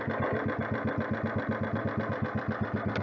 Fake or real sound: real